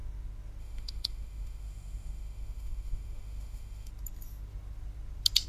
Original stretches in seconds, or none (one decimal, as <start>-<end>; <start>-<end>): 0.0-0.6; 3.9-5.5